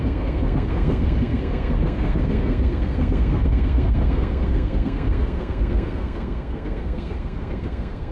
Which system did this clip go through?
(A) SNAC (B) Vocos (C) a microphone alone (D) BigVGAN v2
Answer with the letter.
A